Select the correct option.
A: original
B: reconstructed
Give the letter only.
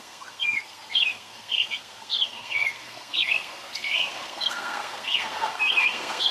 B